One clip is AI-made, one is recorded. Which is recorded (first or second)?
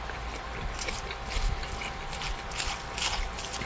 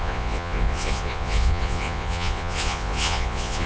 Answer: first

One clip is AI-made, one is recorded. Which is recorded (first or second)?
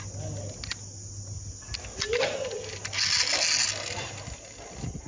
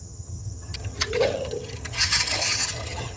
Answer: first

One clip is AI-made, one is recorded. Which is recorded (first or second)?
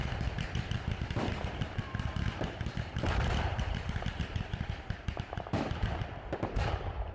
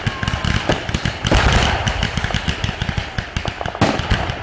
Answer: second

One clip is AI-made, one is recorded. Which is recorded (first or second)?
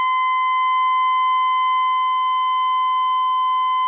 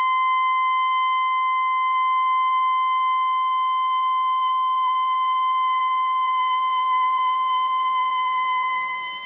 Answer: first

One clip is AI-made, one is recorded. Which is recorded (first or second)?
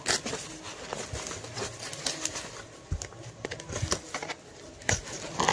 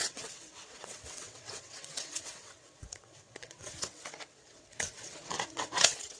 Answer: first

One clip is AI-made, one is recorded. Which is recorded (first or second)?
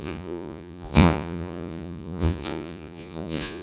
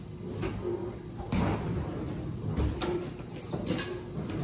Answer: second